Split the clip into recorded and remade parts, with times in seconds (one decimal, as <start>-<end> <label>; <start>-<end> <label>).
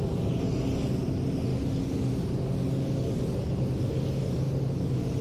0.0-5.2 recorded